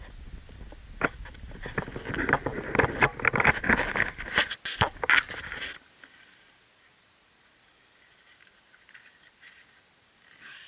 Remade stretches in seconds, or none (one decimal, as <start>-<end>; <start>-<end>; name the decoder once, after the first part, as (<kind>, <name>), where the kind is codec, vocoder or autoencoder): none